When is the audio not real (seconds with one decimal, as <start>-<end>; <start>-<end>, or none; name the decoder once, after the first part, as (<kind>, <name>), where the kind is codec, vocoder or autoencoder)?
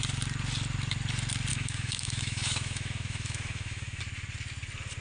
1.5-4.0 (autoencoder, DAC-VAE)